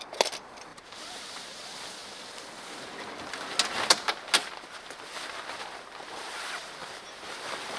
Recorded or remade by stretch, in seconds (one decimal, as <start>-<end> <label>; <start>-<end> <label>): 0.0-0.7 recorded; 0.7-1.6 remade; 1.6-6.8 recorded; 6.8-7.8 remade